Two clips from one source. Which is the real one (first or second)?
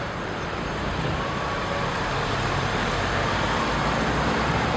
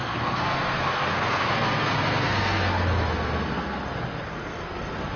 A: first